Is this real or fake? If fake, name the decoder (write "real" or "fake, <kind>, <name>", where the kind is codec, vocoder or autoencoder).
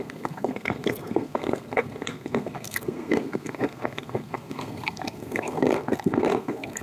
fake, codec, SNAC